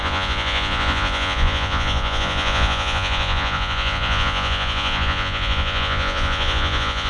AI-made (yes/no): yes